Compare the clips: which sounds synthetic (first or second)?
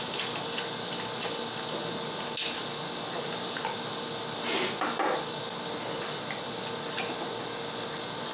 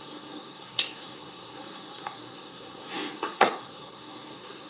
second